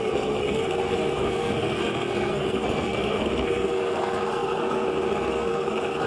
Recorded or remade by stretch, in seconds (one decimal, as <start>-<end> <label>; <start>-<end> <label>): 0.0-6.1 remade